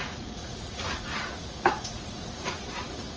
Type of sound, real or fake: fake